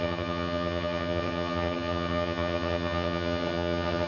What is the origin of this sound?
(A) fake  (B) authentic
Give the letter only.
A